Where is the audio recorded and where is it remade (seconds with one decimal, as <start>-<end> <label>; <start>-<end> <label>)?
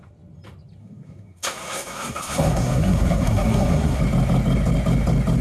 0.0-0.8 recorded; 0.8-4.0 remade; 4.0-5.4 recorded